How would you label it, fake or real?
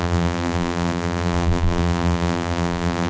fake